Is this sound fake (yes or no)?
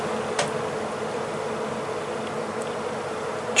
no